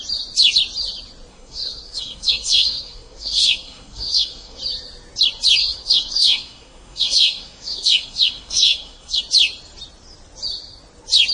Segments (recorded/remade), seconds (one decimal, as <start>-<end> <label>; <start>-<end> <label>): 0.0-1.3 recorded; 1.3-4.6 remade; 4.6-5.6 recorded; 5.6-9.2 remade; 9.2-11.3 recorded